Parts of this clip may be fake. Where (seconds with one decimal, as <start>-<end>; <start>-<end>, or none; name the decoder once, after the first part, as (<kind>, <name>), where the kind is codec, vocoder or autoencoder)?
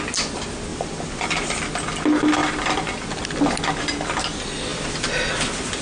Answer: 0.7-1.6 (vocoder, BigVGAN v2)